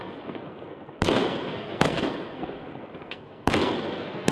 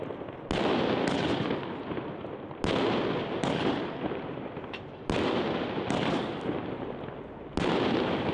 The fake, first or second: first